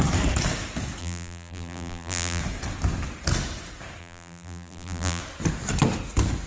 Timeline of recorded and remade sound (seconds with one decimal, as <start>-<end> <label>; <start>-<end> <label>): 0.0-1.0 recorded; 1.0-2.4 remade; 2.4-4.0 recorded; 4.0-5.2 remade; 5.2-6.5 recorded